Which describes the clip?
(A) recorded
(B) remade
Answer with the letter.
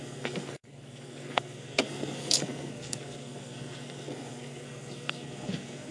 B